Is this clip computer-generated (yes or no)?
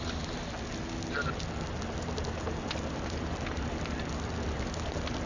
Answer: no